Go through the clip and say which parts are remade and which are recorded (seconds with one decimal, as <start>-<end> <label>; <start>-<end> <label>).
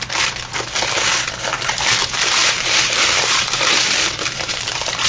0.0-2.0 recorded; 2.0-5.1 remade